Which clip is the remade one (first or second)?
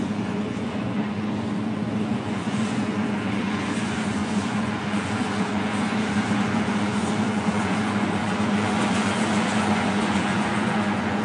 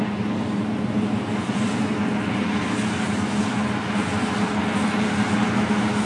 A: first